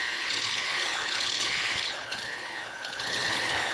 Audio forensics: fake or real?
fake